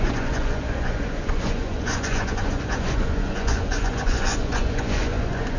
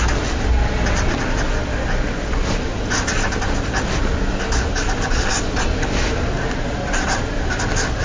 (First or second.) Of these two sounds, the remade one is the first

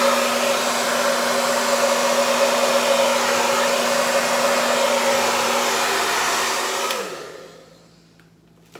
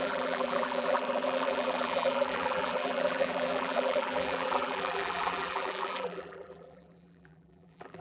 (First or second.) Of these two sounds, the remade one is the second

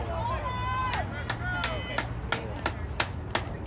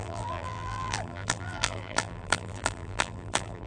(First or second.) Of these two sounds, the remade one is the second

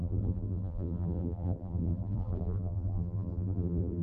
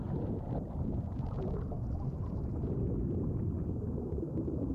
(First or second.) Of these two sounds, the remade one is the first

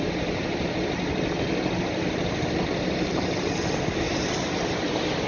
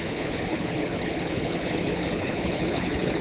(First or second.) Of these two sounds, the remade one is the second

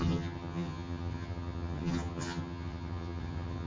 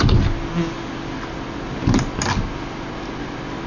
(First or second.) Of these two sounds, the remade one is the first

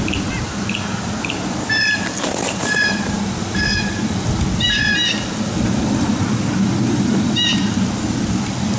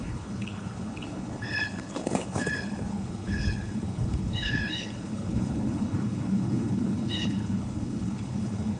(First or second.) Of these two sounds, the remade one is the second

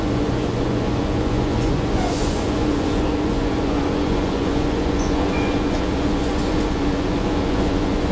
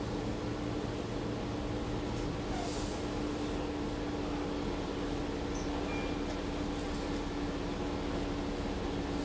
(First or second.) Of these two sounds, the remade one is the first